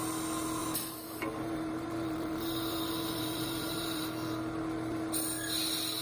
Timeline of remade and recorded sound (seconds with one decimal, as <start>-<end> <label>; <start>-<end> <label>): 0.0-0.6 recorded; 0.6-4.0 remade; 4.0-6.0 recorded